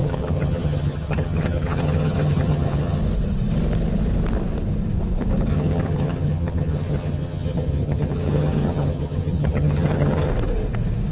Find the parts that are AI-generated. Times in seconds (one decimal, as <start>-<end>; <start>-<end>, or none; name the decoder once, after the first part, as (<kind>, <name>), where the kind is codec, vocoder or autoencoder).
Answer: 0.0-3.0 (vocoder, HiFi-GAN); 5.5-10.3

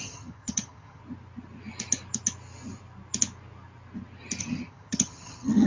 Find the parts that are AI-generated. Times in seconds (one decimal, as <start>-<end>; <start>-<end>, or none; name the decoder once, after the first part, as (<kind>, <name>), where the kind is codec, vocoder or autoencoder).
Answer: 0.0-1.0 (vocoder, HiFi-GAN); 4.4-5.7

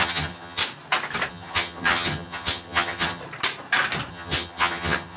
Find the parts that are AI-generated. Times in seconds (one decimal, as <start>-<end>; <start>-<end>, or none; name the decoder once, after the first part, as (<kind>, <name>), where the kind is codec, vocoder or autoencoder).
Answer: 0.0-0.6 (vocoder, HiFi-GAN); 1.3-3.2; 4.1-5.2